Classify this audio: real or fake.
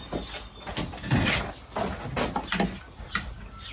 real